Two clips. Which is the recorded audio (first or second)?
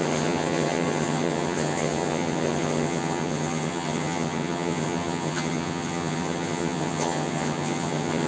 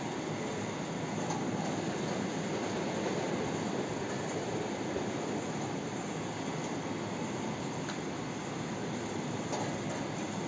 second